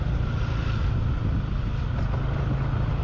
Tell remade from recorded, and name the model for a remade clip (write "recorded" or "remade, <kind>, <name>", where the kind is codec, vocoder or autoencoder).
recorded